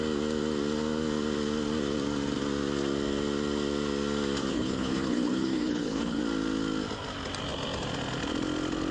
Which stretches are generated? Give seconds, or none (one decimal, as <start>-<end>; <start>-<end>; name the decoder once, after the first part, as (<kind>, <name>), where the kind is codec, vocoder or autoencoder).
4.5-6.2 (codec, HILCodec)

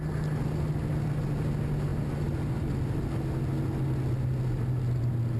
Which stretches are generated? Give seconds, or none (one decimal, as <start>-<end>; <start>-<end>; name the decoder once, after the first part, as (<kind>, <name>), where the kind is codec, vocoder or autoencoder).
none

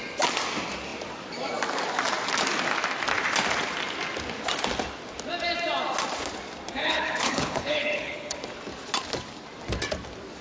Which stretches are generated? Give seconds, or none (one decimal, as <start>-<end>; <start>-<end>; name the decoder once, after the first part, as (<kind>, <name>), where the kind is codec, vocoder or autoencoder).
6.8-8.4 (codec, HILCodec)

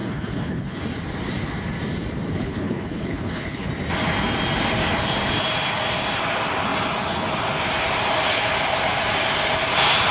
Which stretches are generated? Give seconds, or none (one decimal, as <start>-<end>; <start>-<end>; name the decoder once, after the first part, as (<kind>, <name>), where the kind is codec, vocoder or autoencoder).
0.0-0.8 (codec, HILCodec); 2.3-3.7

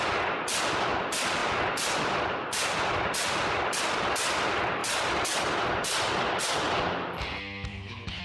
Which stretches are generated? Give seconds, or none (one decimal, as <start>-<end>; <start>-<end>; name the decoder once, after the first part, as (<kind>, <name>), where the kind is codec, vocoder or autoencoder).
7.7-8.2 (codec, HILCodec)